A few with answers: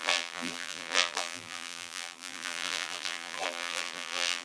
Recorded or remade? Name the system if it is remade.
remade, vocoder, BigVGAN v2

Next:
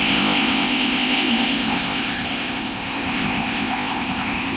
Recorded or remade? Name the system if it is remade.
remade, codec, ZipCodec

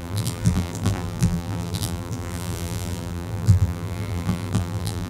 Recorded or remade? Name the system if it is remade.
remade, vocoder, BigVGAN v2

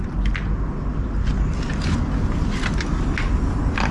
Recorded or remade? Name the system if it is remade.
recorded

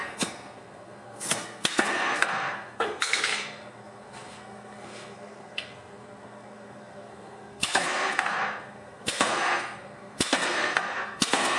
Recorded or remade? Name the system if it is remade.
remade, codec, SNAC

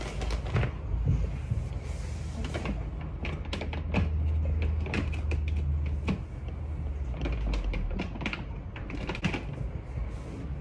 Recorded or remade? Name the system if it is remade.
recorded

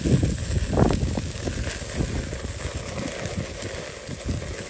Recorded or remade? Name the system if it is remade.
recorded